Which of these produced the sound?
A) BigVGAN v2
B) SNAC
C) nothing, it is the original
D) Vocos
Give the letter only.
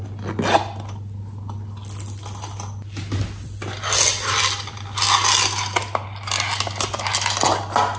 C